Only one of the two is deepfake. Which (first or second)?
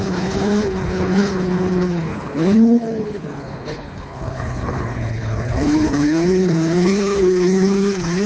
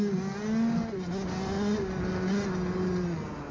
first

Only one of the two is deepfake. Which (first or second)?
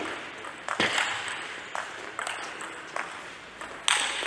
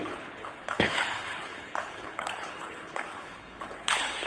second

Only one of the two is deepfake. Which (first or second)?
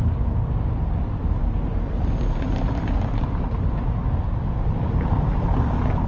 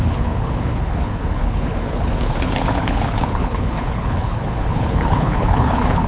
second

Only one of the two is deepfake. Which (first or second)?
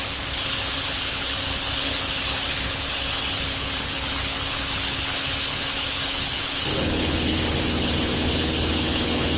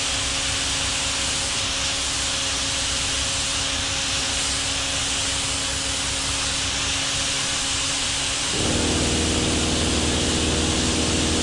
first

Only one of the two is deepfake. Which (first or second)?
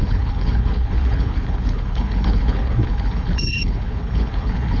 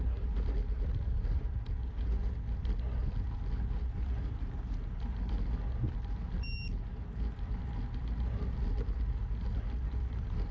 first